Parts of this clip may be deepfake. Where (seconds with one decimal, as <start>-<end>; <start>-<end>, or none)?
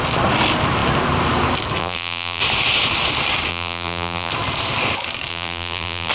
1.8-2.4; 3.5-4.3; 5.3-6.1